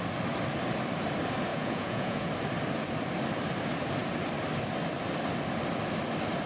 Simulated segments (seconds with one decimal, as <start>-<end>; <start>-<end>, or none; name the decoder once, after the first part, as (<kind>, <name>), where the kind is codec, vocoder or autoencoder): 1.5-2.3 (vocoder, Vocos)